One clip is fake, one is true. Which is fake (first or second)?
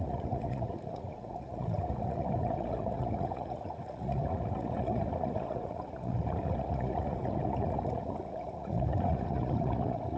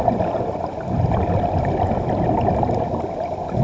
first